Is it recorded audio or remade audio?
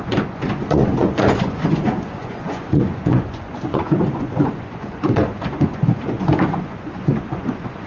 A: remade